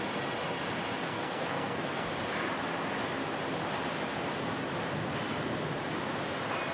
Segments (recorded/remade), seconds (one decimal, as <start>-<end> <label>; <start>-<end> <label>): 0.0-1.0 recorded; 1.0-2.1 remade; 2.1-6.7 recorded